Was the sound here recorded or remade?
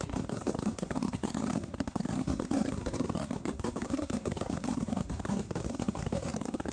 remade